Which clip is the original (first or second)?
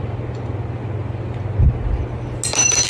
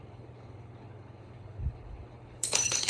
first